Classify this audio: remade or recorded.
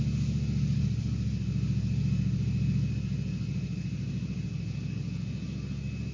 recorded